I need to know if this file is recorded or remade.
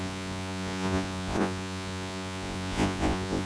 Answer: remade